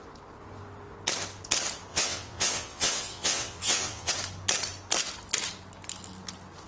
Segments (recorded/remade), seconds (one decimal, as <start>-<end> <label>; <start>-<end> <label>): 0.0-1.9 recorded; 1.9-4.1 remade; 4.1-6.7 recorded

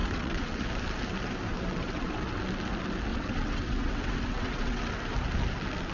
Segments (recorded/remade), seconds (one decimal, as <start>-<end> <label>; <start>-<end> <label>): 0.0-0.7 remade; 0.7-1.5 recorded; 1.5-2.4 remade; 2.4-3.1 recorded; 3.1-4.8 remade; 4.8-5.9 recorded

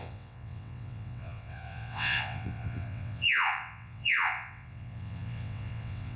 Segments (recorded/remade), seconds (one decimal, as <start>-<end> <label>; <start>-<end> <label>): 0.0-6.2 remade

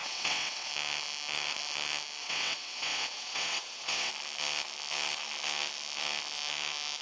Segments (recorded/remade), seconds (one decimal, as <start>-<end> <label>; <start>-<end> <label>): 0.0-0.7 remade; 0.7-2.2 recorded; 2.2-4.1 remade; 4.1-7.0 recorded

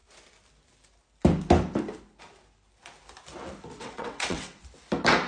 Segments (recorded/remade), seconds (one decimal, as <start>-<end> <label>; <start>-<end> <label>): 0.0-3.8 recorded; 3.8-4.6 remade; 4.6-5.3 recorded

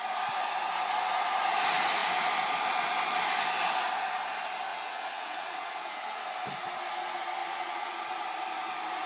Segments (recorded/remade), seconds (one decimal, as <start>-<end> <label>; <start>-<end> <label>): 0.0-4.7 recorded; 4.7-6.2 remade; 6.2-7.4 recorded; 7.4-7.9 remade; 7.9-9.1 recorded